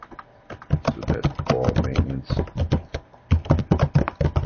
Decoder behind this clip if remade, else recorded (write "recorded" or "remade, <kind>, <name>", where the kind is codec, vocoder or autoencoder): recorded